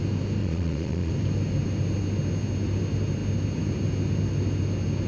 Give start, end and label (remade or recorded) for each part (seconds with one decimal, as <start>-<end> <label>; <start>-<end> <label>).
0.0-0.4 recorded; 0.4-1.1 remade; 1.1-5.1 recorded